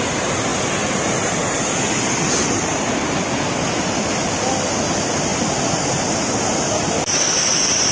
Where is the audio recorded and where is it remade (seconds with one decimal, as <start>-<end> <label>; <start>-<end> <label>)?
0.0-7.9 recorded